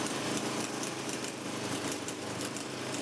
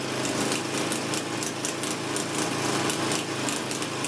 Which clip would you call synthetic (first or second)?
first